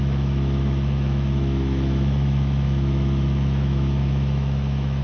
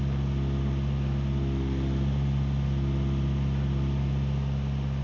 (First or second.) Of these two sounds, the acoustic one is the second